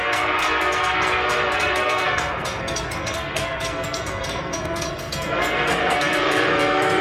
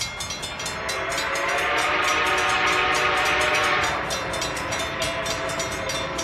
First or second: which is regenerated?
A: first